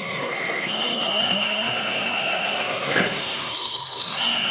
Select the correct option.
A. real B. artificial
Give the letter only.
B